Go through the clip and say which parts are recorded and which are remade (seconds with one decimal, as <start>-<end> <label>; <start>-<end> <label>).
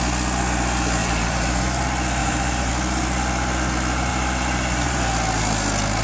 0.0-1.0 recorded; 1.0-1.6 remade; 1.6-2.2 recorded; 2.2-2.7 remade; 2.7-4.1 recorded; 4.1-5.0 remade; 5.0-6.0 recorded